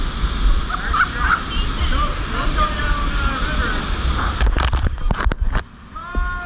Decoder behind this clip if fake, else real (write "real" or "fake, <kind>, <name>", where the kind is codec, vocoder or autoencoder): real